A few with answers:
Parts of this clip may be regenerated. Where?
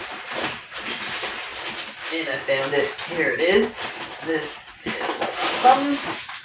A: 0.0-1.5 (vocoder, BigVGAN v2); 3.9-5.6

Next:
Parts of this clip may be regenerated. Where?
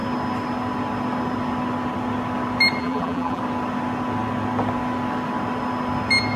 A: 2.8-3.4 (vocoder, BigVGAN v2)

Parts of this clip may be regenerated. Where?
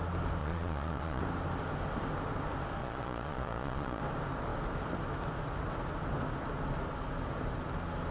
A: 0.4-1.2 (vocoder, Vocos); 2.8-4.0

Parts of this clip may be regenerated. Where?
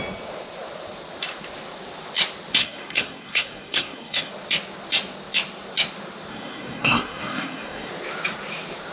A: 2.6-4.3 (codec, SNAC); 6.3-7.9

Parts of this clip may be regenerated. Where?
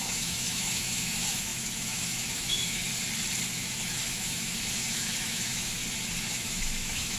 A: 0.0-2.9 (autoencoder, DAC-VAE); 3.5-5.8; 6.3-7.2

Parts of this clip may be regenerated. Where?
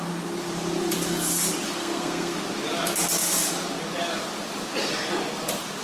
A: 1.8-2.4 (codec, SNAC)